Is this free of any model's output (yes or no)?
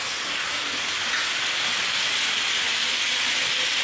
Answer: yes